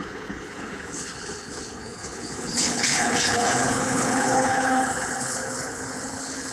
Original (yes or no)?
no